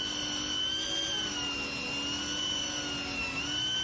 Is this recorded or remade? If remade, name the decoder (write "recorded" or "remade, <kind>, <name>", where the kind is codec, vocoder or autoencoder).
recorded